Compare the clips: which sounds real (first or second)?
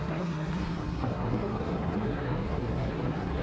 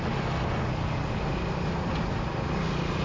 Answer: second